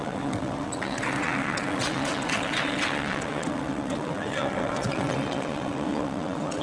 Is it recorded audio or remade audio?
remade